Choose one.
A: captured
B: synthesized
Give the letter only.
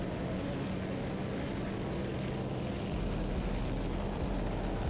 A